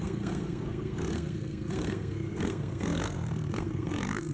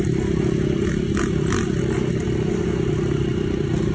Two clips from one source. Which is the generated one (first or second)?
first